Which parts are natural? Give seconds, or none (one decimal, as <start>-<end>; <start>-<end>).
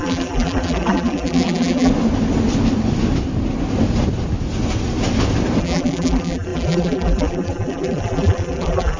1.9-5.6